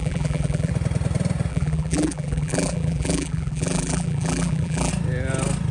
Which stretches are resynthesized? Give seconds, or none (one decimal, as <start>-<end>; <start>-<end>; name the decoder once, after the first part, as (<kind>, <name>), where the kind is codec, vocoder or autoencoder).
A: 0.0-0.7 (vocoder, BigVGAN v2); 1.5-4.9